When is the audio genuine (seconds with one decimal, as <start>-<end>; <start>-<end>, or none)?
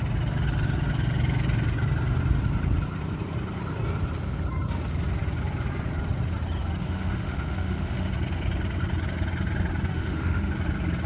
0.0-6.8; 8.1-9.9; 10.5-11.1